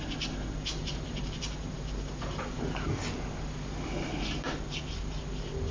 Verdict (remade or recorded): recorded